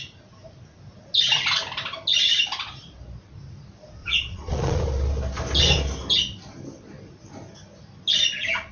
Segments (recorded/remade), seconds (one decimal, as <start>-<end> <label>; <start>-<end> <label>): 0.0-4.0 recorded; 4.0-4.8 remade; 4.8-8.7 recorded